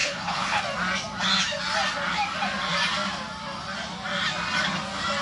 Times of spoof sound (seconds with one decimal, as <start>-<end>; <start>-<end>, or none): 0.0-0.6